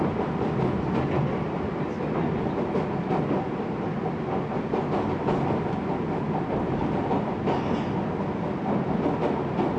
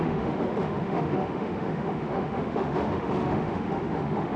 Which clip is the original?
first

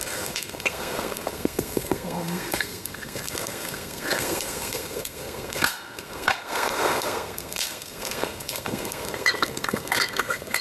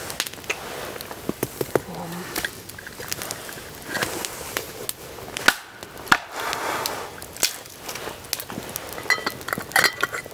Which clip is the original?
second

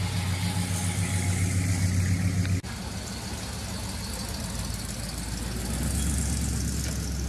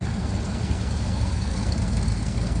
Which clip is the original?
first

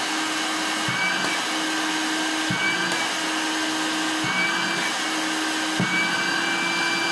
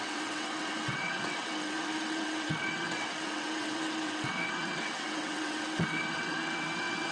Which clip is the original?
first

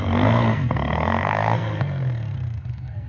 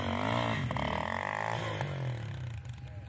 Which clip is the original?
second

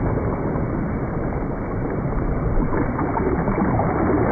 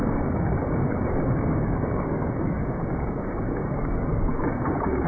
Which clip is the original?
first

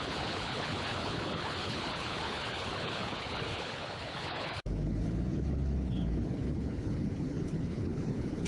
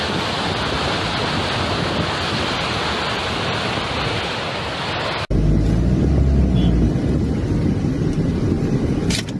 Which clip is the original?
second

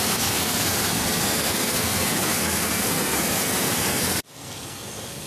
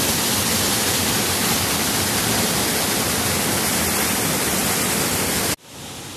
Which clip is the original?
second